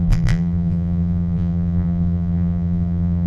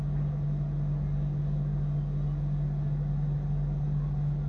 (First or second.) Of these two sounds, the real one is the second